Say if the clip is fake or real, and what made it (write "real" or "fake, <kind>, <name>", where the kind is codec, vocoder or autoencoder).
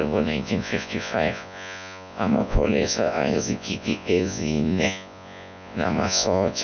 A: fake, vocoder, Vocos